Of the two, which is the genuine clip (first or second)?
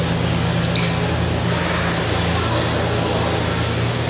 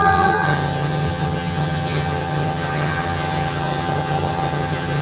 first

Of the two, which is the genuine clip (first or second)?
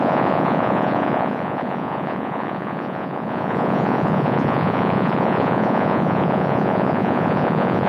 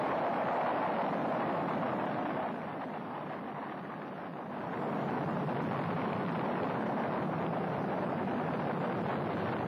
second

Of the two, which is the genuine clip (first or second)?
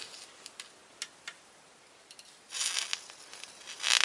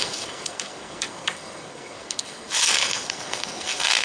first